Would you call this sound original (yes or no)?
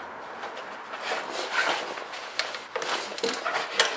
yes